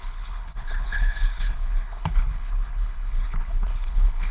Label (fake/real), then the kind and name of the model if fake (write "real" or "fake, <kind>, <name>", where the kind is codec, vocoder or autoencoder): fake, codec, HILCodec